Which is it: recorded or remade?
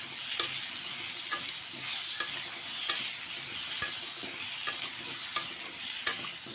recorded